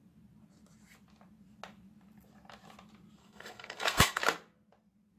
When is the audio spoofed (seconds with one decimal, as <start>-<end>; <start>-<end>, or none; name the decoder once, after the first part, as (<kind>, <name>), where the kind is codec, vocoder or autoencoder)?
3.2-4.2 (codec, SNAC)